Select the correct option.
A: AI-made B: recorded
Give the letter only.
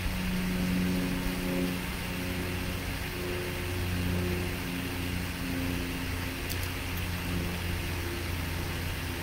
B